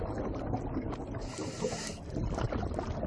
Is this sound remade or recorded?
recorded